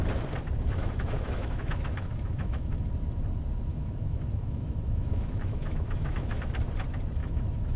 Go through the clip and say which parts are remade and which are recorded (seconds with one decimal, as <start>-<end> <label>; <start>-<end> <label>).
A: 0.0-0.8 recorded; 0.8-2.9 remade; 2.9-3.7 recorded; 3.7-6.5 remade; 6.5-7.2 recorded; 7.2-7.8 remade